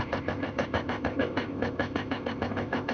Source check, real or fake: fake